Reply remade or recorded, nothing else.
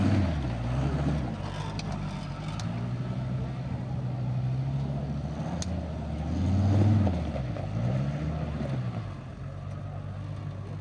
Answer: recorded